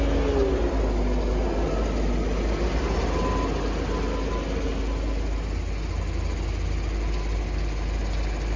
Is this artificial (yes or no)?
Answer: no